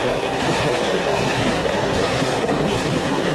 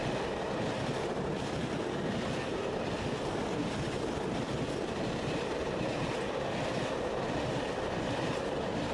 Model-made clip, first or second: first